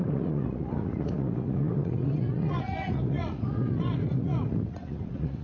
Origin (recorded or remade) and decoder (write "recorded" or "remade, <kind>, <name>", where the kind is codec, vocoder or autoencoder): remade, vocoder, Vocos